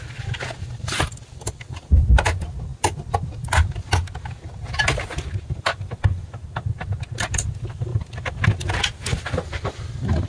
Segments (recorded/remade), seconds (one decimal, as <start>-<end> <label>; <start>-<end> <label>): 0.0-10.3 recorded